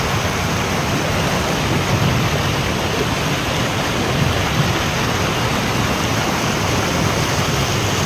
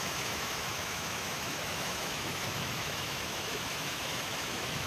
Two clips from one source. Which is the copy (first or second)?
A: second